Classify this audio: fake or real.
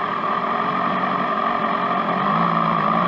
real